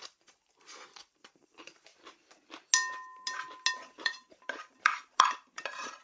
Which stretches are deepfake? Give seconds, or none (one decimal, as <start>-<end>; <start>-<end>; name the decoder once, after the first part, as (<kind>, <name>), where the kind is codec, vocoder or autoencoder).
0.0-1.9 (vocoder, BigVGAN v2); 3.7-6.0